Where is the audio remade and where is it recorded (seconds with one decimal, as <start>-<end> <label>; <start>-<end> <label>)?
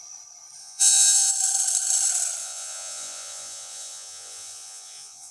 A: 0.0-0.6 recorded; 0.6-1.3 remade; 1.3-2.4 recorded; 2.4-5.3 remade